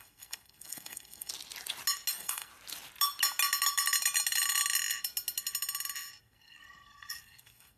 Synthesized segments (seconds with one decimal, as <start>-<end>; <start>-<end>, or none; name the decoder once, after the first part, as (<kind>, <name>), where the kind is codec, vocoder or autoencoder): 0.0-1.3 (codec, SNAC); 2.1-2.5; 6.2-7.8